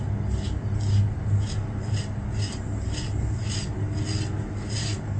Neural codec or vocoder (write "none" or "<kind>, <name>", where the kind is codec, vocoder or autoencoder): none